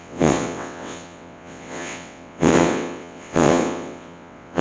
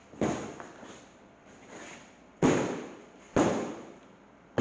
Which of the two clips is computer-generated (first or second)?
first